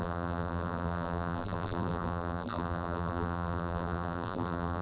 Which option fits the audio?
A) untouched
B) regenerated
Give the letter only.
B